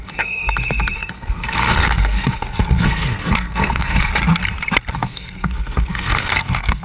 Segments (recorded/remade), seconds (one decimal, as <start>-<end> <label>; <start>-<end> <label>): 0.0-4.1 remade; 4.1-4.9 recorded; 4.9-6.8 remade